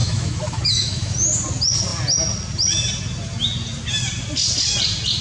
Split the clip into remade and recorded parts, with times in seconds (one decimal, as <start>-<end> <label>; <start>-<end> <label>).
0.0-1.1 remade; 1.1-5.2 recorded